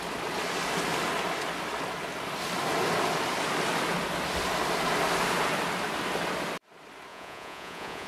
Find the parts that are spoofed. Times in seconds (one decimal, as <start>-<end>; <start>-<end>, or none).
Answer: 7.1-8.1